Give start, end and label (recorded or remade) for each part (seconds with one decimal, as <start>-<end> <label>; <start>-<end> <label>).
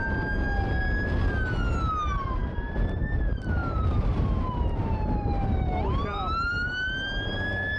0.0-3.6 recorded; 3.6-6.7 remade; 6.7-7.8 recorded